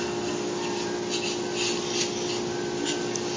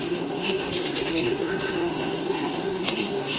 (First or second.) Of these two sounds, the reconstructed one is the second